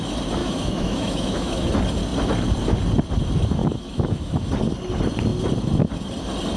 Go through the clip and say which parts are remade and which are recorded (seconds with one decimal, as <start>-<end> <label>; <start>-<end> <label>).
0.0-0.4 recorded; 0.4-1.7 remade; 1.7-3.6 recorded; 3.6-4.5 remade; 4.5-6.6 recorded